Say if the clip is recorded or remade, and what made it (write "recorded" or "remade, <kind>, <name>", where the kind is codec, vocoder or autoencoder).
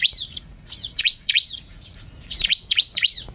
remade, vocoder, Vocos